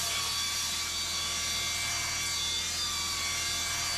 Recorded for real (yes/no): yes